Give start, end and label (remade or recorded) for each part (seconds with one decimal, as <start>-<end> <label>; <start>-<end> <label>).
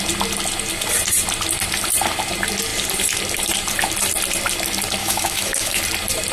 0.0-5.0 recorded; 5.0-5.8 remade; 5.8-6.3 recorded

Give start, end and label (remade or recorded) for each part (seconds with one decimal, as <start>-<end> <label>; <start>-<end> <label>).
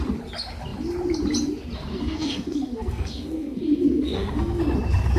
0.0-1.9 recorded; 1.9-4.6 remade; 4.6-5.2 recorded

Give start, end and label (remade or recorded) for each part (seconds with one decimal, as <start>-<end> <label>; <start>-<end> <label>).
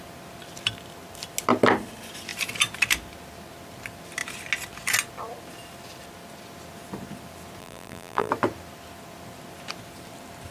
0.0-7.6 recorded; 7.6-8.3 remade; 8.3-10.5 recorded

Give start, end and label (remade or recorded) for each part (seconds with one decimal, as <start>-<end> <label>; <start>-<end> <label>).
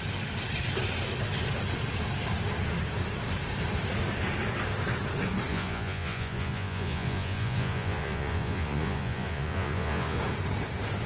0.0-5.5 recorded; 5.5-10.2 remade; 10.2-11.1 recorded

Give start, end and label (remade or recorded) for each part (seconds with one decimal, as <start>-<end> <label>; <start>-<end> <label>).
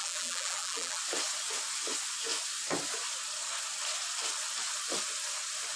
0.0-1.0 remade; 1.0-5.8 recorded